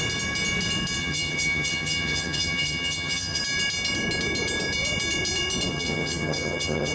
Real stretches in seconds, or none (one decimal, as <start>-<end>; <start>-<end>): 0.0-1.0; 3.4-5.7